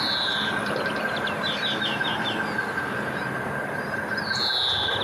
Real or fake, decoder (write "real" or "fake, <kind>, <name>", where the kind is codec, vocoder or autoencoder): real